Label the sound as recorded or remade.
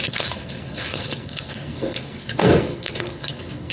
remade